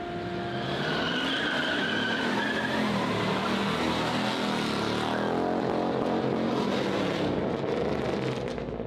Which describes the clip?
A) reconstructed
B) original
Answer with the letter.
B